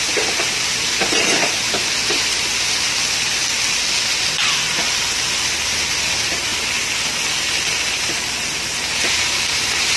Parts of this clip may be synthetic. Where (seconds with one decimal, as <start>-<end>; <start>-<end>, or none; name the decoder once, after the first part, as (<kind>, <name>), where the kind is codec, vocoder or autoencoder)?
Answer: none

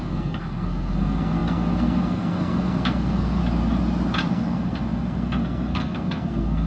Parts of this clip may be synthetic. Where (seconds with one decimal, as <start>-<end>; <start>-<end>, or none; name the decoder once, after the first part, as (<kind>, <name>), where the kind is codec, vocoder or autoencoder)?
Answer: 0.0-3.4 (codec, SNAC); 4.3-6.7

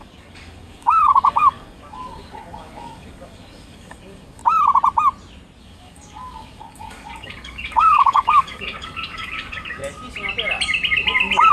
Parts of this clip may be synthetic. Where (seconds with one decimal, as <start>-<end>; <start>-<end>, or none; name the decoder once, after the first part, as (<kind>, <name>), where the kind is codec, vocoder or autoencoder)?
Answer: 0.0-4.4 (codec, DAC); 5.6-9.8

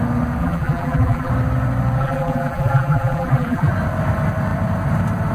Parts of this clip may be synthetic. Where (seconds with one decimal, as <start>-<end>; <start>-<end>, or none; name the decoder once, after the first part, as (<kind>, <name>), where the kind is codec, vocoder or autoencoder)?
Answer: 0.4-1.3 (vocoder, BigVGAN v2); 2.0-3.7

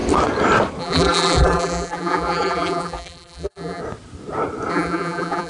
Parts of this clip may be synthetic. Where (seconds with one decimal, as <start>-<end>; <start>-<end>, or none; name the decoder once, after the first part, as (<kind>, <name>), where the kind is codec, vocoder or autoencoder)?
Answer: 0.8-3.8 (vocoder, BigVGAN v2); 4.7-5.5